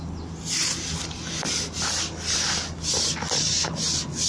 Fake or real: real